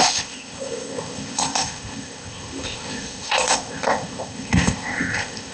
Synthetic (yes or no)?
yes